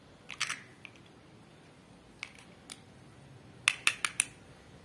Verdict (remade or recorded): recorded